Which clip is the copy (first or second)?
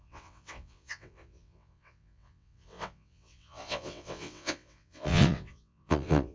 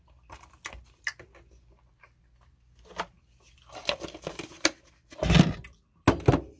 first